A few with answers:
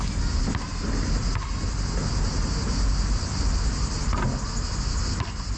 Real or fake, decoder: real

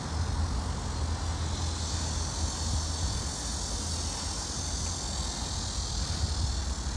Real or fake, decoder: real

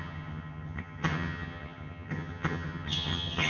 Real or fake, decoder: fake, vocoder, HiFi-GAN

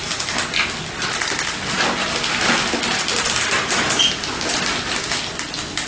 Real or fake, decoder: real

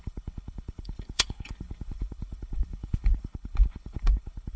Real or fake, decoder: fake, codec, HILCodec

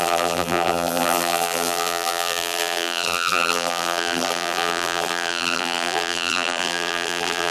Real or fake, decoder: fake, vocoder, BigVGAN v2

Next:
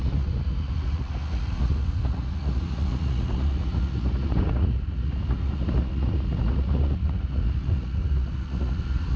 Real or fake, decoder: fake, vocoder, Vocos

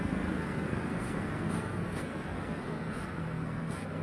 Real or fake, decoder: fake, codec, SNAC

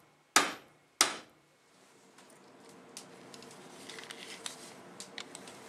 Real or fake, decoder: real